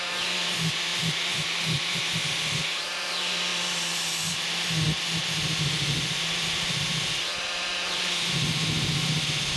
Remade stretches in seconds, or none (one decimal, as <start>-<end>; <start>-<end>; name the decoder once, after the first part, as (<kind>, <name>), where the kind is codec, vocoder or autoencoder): none